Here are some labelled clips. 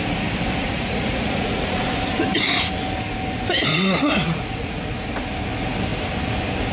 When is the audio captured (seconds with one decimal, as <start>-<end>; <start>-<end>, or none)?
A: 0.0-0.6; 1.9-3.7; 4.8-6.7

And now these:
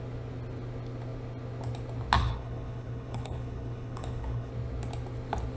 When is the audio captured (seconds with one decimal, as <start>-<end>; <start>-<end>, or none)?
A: 0.0-2.2; 4.5-5.6

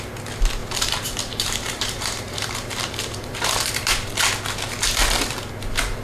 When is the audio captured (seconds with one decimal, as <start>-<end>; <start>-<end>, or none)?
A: 0.0-0.6; 4.2-6.0

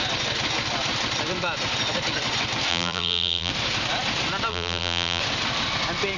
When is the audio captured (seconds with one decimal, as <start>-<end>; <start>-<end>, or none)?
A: 0.0-2.7; 3.5-4.5; 5.2-6.2

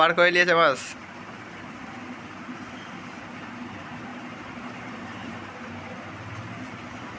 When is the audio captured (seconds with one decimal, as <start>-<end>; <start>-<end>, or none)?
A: 0.0-1.0; 1.5-4.1; 5.7-7.2

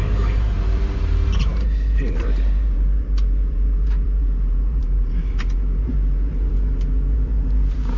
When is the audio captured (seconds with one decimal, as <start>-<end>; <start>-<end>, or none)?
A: none